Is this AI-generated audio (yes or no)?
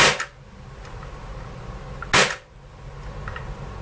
no